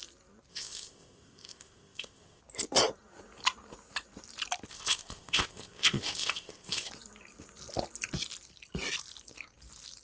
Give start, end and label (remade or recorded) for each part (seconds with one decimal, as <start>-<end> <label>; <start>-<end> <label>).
0.0-0.5 recorded; 0.5-2.4 remade; 2.4-4.7 recorded; 4.7-6.9 remade; 6.9-10.0 recorded